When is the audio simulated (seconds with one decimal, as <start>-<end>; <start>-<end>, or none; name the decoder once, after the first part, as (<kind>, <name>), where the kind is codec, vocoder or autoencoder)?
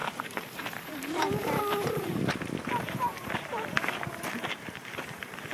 0.0-5.5 (vocoder, BigVGAN v2)